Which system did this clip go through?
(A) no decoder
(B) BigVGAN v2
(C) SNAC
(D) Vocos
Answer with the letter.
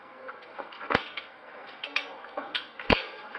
C